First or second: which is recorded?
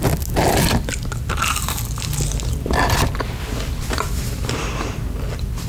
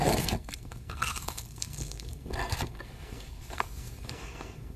first